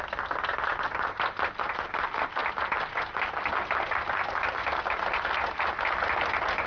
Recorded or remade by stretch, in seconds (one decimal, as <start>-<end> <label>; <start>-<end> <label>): 0.0-6.7 recorded